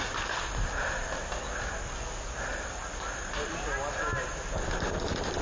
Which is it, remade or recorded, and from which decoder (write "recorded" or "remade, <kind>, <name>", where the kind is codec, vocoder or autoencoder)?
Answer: recorded